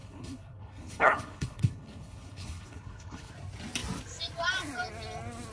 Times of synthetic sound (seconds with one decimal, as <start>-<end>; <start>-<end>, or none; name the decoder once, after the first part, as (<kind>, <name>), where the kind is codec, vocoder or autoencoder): 0.0-3.3 (codec, HILCodec)